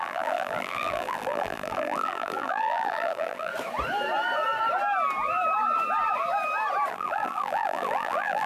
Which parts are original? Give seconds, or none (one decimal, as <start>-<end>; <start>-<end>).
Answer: 3.5-6.9